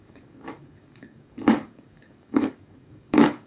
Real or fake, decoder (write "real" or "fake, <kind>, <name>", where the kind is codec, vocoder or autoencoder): fake, codec, DAC